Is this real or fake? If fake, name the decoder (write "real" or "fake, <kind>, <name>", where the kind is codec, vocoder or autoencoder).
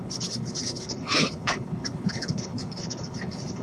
fake, codec, HILCodec